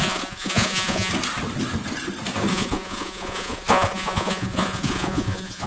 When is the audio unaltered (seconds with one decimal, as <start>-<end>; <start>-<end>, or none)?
1.1-2.5